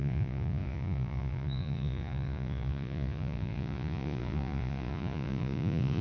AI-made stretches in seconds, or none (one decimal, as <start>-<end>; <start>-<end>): 0.0-6.0